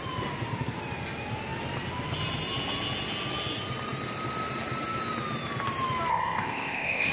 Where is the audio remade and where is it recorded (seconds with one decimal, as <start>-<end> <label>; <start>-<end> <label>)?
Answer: 0.0-6.1 recorded; 6.1-7.1 remade